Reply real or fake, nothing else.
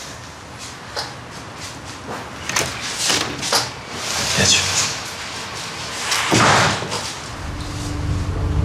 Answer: real